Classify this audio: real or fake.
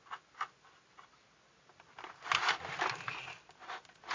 real